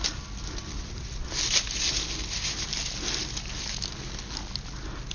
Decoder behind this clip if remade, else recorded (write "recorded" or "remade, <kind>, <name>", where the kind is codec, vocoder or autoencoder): recorded